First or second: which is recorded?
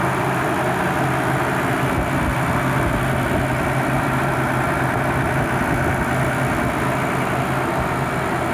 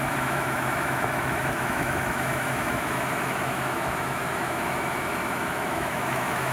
first